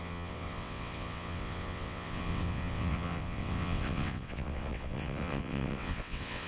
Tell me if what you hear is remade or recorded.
remade